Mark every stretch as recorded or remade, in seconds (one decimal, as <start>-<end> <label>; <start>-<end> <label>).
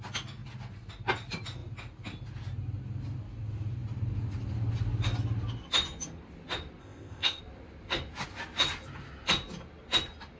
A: 0.0-6.8 recorded; 6.8-7.4 remade; 7.4-10.4 recorded